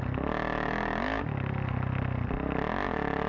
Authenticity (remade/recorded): recorded